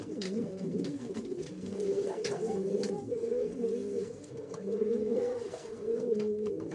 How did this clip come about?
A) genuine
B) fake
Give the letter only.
B